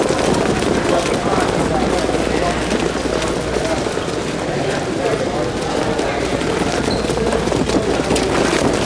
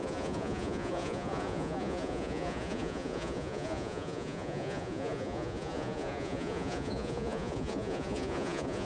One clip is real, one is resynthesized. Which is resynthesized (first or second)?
second